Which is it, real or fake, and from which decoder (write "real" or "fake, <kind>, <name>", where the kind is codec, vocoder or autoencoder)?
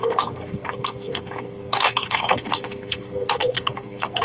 fake, codec, SNAC